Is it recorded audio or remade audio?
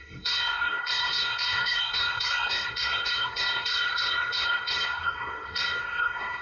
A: remade